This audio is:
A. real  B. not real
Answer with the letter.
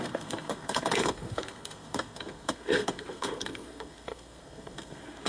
B